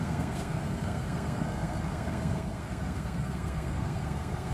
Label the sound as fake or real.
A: fake